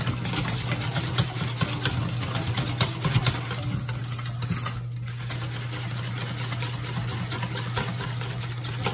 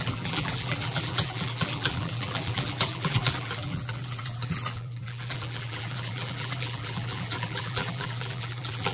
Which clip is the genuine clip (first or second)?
first